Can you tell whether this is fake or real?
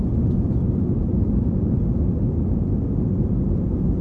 real